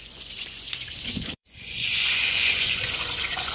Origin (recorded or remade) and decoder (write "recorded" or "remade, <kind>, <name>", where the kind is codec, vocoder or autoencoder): remade, vocoder, Vocos